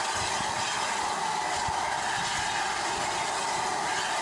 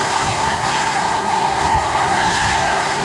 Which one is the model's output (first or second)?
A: second